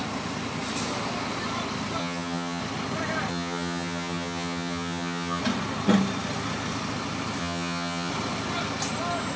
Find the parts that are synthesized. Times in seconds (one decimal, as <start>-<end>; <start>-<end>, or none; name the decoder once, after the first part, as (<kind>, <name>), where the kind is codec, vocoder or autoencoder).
2.0-2.6 (vocoder, HiFi-GAN); 3.3-5.4; 7.4-8.1